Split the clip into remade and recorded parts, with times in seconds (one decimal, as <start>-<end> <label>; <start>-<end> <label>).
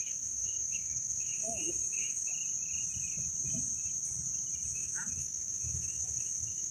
0.0-2.3 remade; 2.3-4.7 recorded; 4.7-6.7 remade